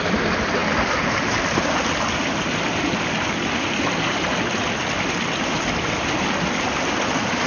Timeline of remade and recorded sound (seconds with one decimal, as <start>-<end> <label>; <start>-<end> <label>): 0.0-7.5 recorded

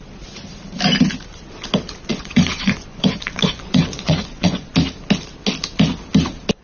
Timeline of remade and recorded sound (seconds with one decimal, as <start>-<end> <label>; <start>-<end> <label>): 0.0-2.1 recorded; 2.1-4.7 remade; 4.7-6.6 recorded

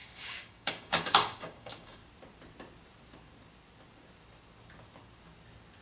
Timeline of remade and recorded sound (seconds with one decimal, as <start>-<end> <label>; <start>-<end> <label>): 0.0-2.0 remade; 2.0-5.8 recorded

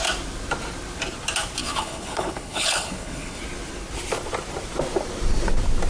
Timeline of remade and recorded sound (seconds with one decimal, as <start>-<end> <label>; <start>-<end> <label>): 0.0-1.6 recorded; 1.6-3.4 remade; 3.4-5.9 recorded

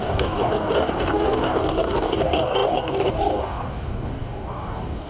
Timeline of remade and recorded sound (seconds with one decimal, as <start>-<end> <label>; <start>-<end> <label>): 0.0-5.1 remade

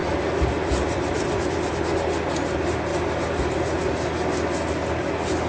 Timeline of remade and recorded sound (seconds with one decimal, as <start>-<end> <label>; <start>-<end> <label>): 0.0-2.0 remade; 2.0-5.5 recorded

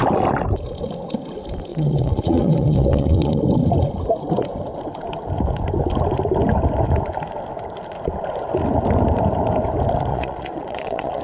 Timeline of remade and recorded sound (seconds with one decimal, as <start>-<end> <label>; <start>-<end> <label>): 0.0-1.7 recorded; 1.7-3.4 remade; 3.4-10.1 recorded; 10.1-11.2 remade

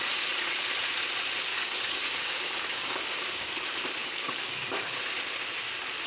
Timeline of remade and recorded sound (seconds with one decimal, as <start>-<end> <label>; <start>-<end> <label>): 0.0-1.5 recorded; 1.5-3.5 remade; 3.5-4.0 recorded; 4.0-5.0 remade; 5.0-6.1 recorded